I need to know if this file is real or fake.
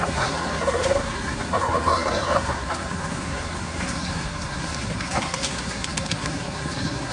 fake